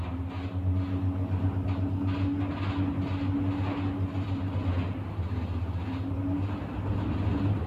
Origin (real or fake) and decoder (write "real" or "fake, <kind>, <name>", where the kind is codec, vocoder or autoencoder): real